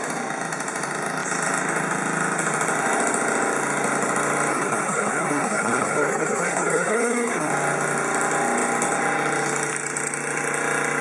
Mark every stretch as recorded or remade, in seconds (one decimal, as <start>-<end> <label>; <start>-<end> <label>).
0.0-4.5 recorded; 4.5-7.5 remade; 7.5-11.0 recorded